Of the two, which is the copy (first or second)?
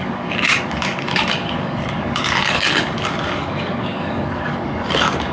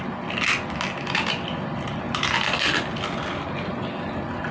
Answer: first